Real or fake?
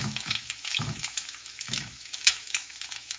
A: fake